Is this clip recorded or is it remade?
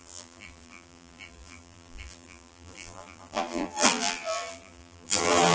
remade